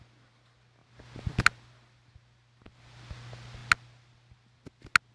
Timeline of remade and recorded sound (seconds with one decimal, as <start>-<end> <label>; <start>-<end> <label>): 0.0-5.1 recorded